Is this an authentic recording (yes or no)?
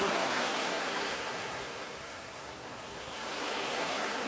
no